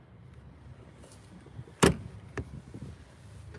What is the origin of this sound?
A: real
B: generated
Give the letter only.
A